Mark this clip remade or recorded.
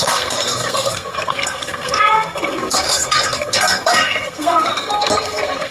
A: remade